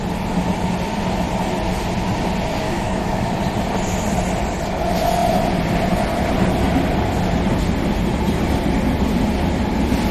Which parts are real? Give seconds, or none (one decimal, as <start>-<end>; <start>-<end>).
0.0-2.5; 3.4-10.1